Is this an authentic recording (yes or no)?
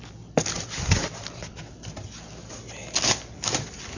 yes